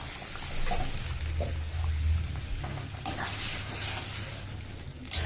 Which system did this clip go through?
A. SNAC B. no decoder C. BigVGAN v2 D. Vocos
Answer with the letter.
B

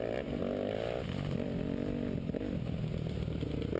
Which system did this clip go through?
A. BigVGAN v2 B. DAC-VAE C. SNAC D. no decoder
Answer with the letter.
D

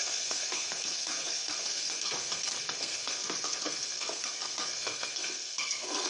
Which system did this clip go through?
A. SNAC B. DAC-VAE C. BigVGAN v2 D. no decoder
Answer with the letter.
A